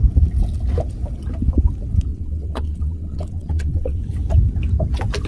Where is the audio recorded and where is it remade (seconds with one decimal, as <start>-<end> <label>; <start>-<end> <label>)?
0.0-2.1 recorded; 2.1-4.0 remade; 4.0-5.3 recorded